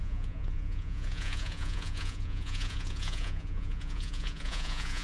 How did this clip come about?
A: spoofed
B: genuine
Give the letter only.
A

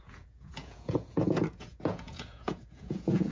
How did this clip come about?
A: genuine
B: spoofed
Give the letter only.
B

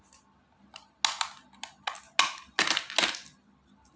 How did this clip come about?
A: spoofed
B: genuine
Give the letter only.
B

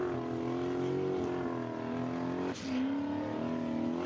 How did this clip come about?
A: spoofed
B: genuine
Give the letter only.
B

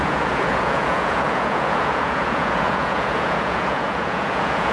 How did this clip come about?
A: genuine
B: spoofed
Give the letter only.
B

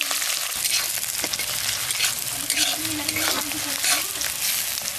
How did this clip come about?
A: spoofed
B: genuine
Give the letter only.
B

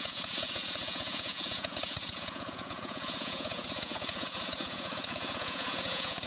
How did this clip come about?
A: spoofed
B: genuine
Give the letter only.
A